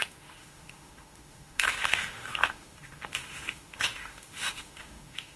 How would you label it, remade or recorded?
remade